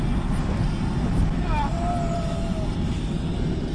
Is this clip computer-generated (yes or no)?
no